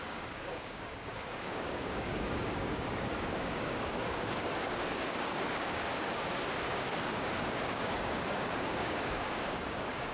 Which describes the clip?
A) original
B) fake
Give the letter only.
B